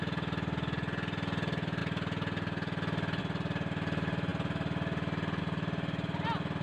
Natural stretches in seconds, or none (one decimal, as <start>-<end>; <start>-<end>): 0.0-6.6